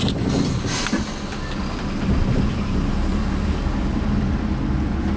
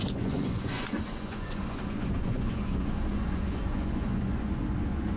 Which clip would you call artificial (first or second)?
second